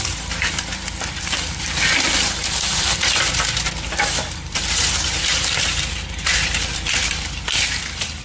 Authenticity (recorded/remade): remade